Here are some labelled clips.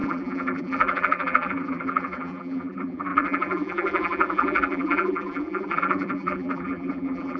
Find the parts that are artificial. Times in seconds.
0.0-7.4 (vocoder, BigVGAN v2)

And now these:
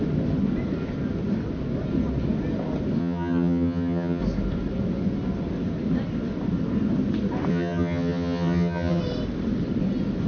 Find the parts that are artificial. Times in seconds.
3.0-4.2 (vocoder, HiFi-GAN); 7.5-9.0

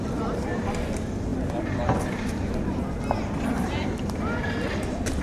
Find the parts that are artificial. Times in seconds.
none

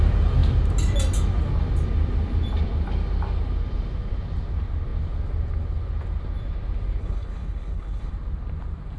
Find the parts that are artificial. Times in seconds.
7.0-8.1 (codec, HILCodec)